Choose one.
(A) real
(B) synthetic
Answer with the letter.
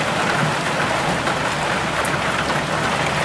A